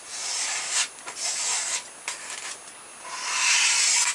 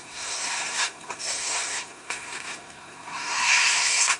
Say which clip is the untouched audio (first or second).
first